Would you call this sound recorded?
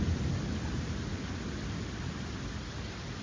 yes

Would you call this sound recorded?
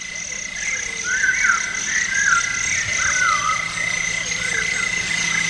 yes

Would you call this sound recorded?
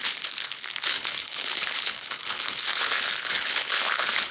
no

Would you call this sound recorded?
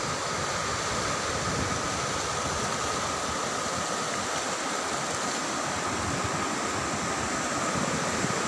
yes